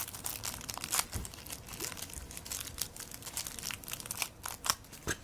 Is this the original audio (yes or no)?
yes